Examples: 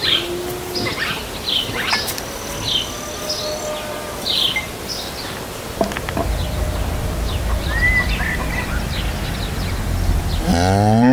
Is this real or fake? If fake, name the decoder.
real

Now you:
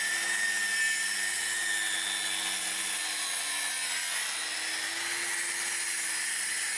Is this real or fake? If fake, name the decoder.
real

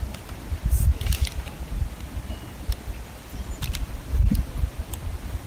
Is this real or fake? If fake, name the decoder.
real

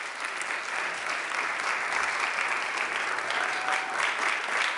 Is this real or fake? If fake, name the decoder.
real